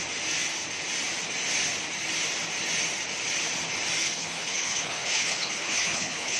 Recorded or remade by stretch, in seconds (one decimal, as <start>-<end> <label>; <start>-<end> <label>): 0.0-4.0 recorded; 4.0-6.4 remade